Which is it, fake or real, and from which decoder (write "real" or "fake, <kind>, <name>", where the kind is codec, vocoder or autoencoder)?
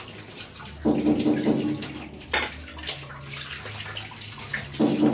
real